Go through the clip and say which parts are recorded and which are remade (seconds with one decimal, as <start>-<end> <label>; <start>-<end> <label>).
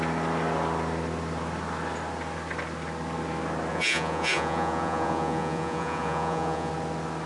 0.0-3.7 recorded; 3.7-6.7 remade; 6.7-7.3 recorded